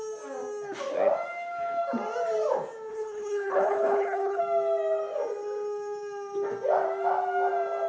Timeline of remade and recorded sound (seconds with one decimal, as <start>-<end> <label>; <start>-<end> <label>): 0.0-2.9 recorded; 2.9-4.4 remade; 4.4-7.9 recorded